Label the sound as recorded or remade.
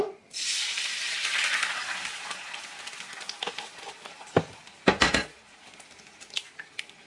recorded